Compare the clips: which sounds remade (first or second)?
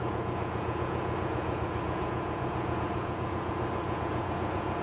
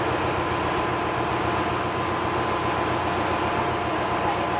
first